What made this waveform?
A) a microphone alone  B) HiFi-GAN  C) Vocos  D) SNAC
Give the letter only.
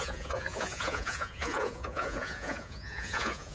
C